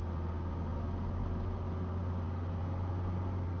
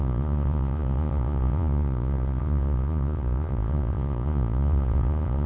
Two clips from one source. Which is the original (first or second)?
first